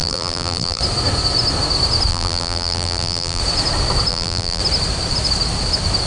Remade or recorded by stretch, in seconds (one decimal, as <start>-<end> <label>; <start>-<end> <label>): 0.0-0.8 remade; 0.8-2.1 recorded; 2.1-3.4 remade; 3.4-4.1 recorded; 4.1-4.6 remade; 4.6-6.1 recorded